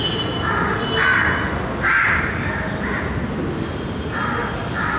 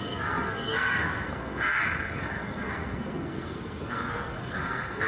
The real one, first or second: first